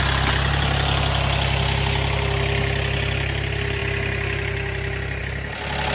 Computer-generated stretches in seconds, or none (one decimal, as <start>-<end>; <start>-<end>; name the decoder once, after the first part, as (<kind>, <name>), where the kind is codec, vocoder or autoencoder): none